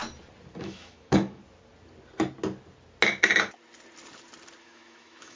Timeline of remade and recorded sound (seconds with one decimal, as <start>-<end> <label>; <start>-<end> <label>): 0.0-0.6 recorded; 0.6-1.4 remade; 1.4-4.6 recorded; 4.6-5.4 remade